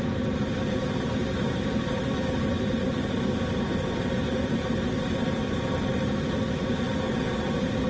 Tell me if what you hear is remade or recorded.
recorded